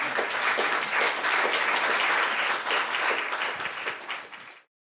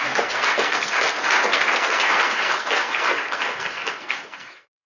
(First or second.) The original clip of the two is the first